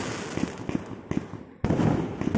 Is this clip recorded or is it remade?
recorded